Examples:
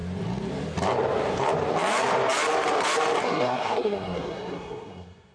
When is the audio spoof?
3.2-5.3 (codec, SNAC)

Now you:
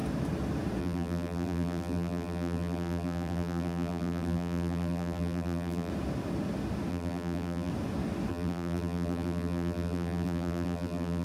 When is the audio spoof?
0.8-5.9 (vocoder, BigVGAN v2); 6.9-7.7; 8.3-11.2